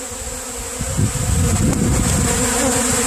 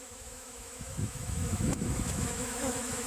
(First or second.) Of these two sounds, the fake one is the second